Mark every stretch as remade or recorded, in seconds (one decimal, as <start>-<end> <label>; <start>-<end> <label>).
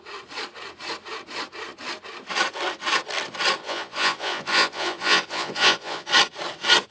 0.0-3.6 recorded; 3.6-6.1 remade; 6.1-6.9 recorded